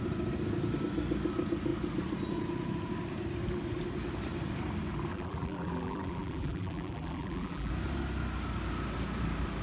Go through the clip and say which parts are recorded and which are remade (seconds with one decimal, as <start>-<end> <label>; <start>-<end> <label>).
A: 0.0-5.1 recorded; 5.1-7.7 remade; 7.7-9.6 recorded

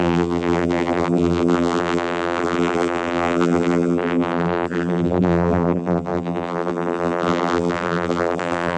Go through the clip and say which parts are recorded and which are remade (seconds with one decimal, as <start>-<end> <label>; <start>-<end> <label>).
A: 0.0-8.8 remade

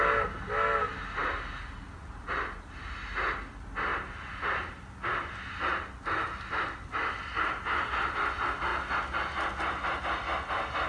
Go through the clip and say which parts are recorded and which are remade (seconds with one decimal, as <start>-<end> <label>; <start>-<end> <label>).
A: 0.0-10.9 recorded

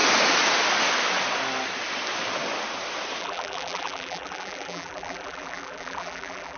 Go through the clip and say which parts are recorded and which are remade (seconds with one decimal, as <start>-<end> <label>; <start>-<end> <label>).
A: 0.0-3.2 recorded; 3.2-6.6 remade